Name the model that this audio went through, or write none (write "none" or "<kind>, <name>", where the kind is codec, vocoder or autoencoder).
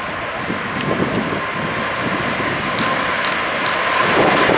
none